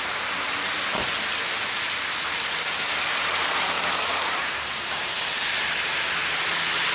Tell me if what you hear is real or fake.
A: real